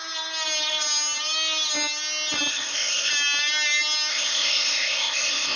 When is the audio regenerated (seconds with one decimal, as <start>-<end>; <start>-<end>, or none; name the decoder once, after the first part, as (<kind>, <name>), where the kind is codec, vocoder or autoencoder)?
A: 2.5-3.1 (codec, ZipCodec); 4.1-5.6